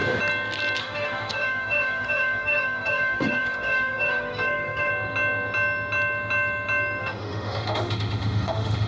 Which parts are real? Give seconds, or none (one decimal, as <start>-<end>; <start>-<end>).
0.0-0.8; 4.9-7.0